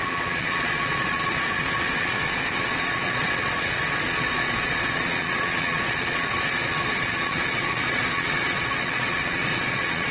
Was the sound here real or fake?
fake